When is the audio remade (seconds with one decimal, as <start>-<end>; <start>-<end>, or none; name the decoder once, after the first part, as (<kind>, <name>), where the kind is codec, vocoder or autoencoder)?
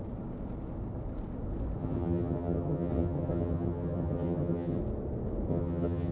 1.8-4.8 (vocoder, HiFi-GAN); 5.5-6.1